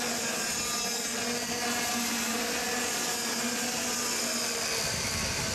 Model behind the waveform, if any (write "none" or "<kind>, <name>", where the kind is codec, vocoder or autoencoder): none